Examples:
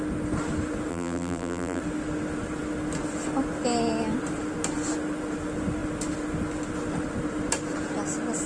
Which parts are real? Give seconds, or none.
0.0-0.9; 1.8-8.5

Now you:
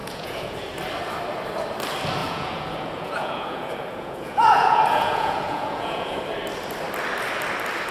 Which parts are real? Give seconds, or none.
0.6-2.2; 6.2-7.9

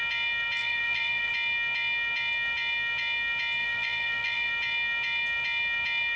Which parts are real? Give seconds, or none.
0.0-0.6; 1.3-3.6; 4.5-6.2

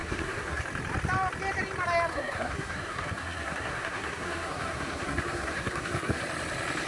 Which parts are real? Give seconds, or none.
0.6-2.1; 6.2-6.9

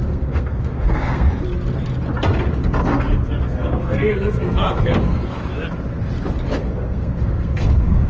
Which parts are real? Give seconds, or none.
1.3-2.8; 5.4-6.6

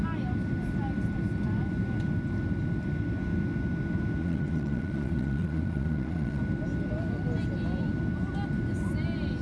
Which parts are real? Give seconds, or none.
0.0-4.2; 6.4-9.4